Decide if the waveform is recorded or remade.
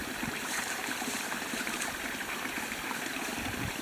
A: remade